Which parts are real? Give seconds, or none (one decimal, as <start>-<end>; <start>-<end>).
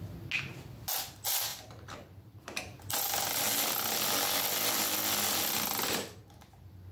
0.0-1.5; 2.6-6.9